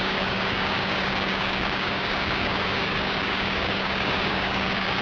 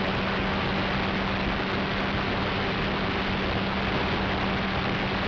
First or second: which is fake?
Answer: first